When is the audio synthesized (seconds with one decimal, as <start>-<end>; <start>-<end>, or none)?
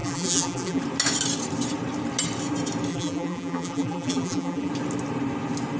0.0-0.8; 2.9-4.7